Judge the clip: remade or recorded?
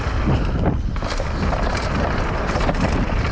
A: recorded